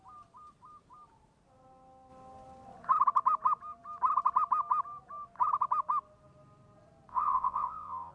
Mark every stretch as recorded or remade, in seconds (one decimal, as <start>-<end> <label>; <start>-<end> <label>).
0.0-7.1 recorded; 7.1-8.1 remade